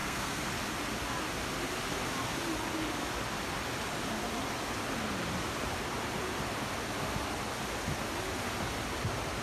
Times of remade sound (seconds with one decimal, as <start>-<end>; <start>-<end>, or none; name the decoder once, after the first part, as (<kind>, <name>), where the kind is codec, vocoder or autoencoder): 0.0-0.5 (codec, SNAC)